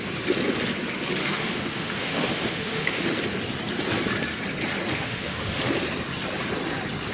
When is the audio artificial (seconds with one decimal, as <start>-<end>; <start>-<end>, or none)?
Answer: 1.2-3.2; 4.9-5.6